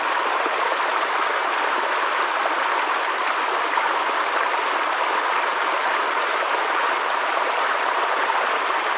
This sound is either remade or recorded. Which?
recorded